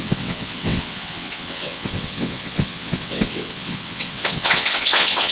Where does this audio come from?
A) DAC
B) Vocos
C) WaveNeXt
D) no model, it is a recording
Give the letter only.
C